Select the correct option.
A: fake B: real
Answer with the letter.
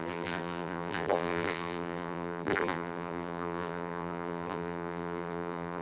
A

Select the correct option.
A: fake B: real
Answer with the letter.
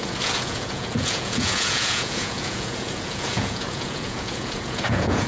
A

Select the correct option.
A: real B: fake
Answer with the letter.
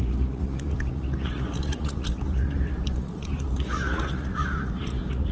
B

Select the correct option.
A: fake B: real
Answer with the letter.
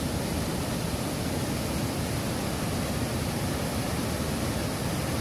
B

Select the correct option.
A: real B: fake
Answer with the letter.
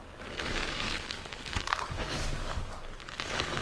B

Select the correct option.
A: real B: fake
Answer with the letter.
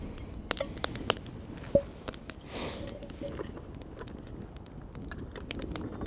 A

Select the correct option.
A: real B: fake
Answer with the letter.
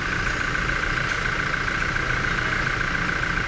A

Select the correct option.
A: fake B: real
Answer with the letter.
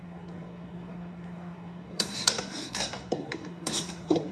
A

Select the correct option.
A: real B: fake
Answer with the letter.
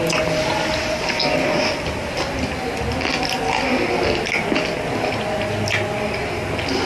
A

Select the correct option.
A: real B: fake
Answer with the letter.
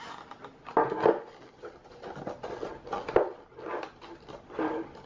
A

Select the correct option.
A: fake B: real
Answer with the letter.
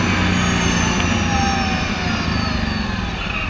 B